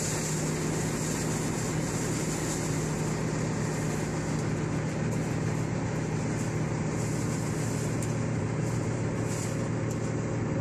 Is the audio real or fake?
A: real